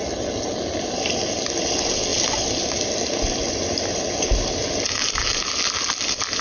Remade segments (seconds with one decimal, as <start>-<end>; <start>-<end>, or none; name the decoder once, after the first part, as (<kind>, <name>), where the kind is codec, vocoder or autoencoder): none